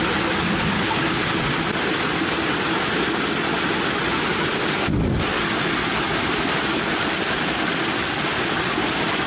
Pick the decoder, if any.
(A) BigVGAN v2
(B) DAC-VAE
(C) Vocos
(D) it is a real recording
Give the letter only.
D